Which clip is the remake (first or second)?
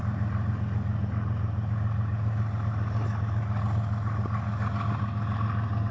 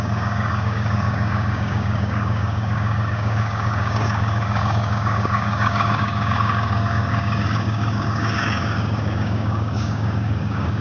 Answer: second